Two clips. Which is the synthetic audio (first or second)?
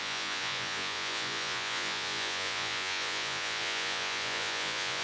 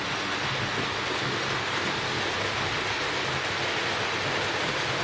first